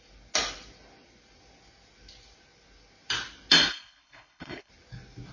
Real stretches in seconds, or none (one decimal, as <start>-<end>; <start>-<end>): 0.0-3.7; 4.7-5.3